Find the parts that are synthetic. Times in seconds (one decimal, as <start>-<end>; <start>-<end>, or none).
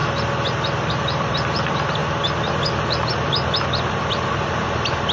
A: 0.9-2.0; 2.5-5.1